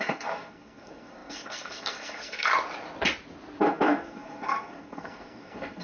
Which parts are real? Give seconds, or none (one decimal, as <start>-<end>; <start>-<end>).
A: 2.5-3.6